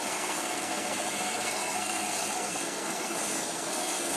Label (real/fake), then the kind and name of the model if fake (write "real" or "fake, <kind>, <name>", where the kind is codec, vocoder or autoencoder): fake, codec, SNAC